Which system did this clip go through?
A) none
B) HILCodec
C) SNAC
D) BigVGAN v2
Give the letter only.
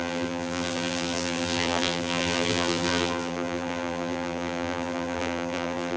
D